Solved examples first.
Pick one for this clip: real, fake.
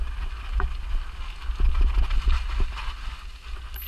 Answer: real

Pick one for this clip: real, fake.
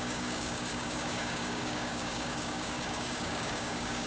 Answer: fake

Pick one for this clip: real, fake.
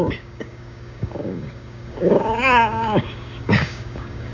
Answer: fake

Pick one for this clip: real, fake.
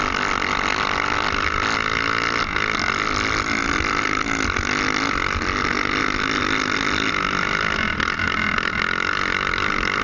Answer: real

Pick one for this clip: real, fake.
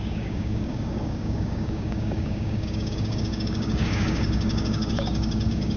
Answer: fake